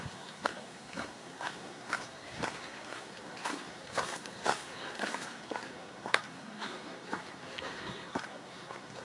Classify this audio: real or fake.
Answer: fake